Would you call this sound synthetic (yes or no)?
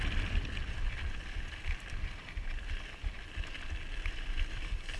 no